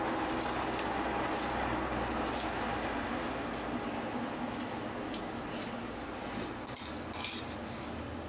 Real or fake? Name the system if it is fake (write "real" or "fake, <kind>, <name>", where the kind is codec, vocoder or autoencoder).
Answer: real